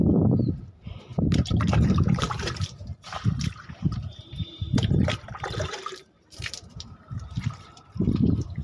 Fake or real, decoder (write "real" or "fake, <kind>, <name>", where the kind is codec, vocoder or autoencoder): fake, vocoder, BigVGAN v2